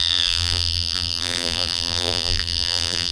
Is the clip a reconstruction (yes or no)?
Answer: yes